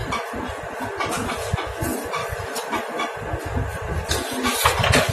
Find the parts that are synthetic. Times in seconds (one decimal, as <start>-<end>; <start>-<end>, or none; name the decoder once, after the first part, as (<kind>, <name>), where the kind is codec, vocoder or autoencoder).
0.0-0.6 (vocoder, BigVGAN v2); 2.2-3.0; 3.7-5.1